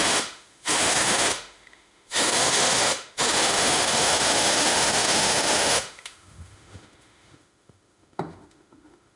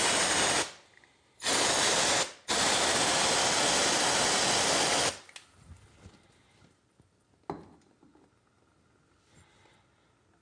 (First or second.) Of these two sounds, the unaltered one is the second